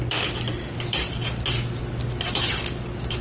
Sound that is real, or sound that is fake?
real